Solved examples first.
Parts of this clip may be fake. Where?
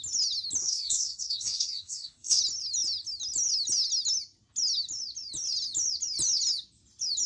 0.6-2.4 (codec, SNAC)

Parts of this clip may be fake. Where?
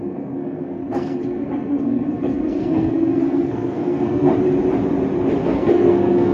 0.0-4.3 (codec, SNAC); 5.4-6.3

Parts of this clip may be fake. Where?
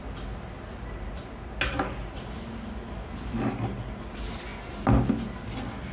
none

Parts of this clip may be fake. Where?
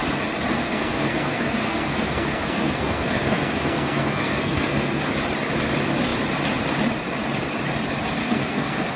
0.5-5.0 (codec, SNAC); 8.2-9.0